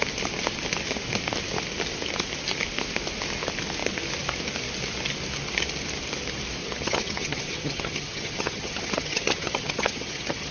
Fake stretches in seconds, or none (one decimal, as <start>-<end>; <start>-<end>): 6.6-10.5